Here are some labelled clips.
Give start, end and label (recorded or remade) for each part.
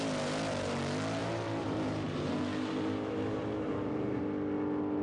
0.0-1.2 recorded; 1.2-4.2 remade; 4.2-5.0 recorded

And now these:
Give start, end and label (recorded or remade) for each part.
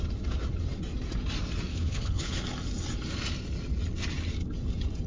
0.0-1.7 recorded; 1.7-2.4 remade; 2.4-5.1 recorded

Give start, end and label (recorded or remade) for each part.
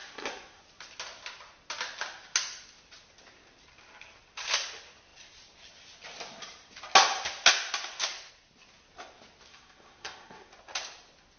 0.0-0.6 remade; 0.6-9.5 recorded; 9.5-10.5 remade; 10.5-11.4 recorded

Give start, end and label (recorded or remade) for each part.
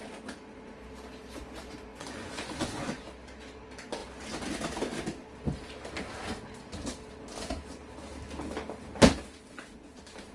0.0-1.9 recorded; 1.9-3.0 remade; 3.0-10.3 recorded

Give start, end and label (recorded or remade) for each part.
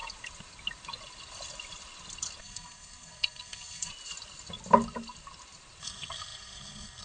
0.0-2.4 recorded; 2.4-3.9 remade; 3.9-5.8 recorded; 5.8-7.0 remade